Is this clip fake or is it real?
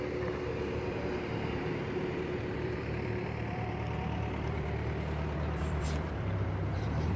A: fake